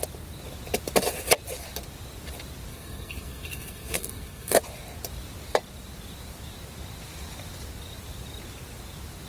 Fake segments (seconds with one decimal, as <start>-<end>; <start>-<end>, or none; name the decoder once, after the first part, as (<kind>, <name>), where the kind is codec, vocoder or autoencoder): 2.7-4.6 (codec, SNAC)